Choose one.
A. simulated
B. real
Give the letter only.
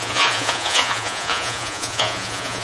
A